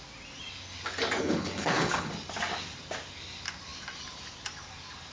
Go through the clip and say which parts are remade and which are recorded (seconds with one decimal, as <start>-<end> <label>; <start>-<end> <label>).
0.0-1.2 recorded; 1.2-2.1 remade; 2.1-5.1 recorded